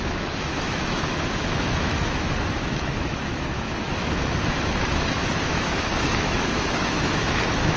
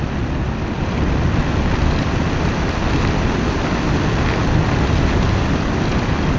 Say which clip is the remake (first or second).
first